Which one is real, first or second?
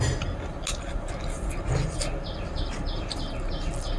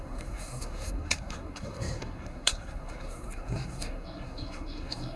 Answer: first